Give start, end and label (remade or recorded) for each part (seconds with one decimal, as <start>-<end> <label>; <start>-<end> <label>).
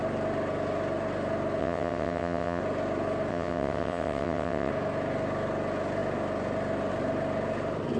0.0-1.6 recorded; 1.6-2.6 remade; 2.6-3.3 recorded; 3.3-4.7 remade; 4.7-8.0 recorded